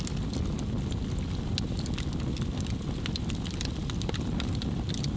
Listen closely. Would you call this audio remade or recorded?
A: recorded